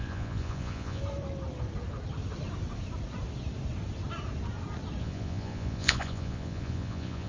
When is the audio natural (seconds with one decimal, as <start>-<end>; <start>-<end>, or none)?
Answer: 1.0-5.0